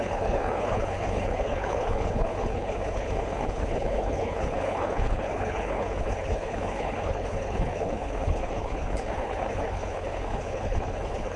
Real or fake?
fake